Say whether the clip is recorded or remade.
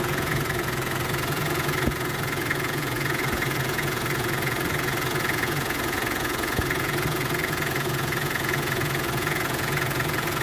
remade